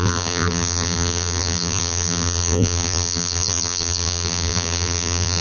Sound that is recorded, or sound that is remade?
remade